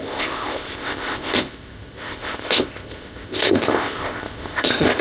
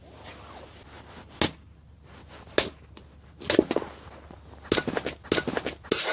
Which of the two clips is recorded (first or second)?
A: second